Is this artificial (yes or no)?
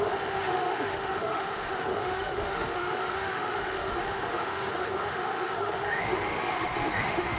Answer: yes